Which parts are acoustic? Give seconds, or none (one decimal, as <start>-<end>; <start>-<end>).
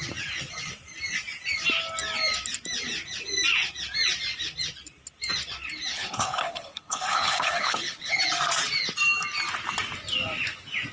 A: 0.0-5.9; 8.2-10.9